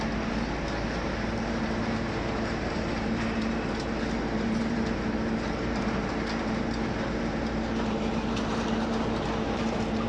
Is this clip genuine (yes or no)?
no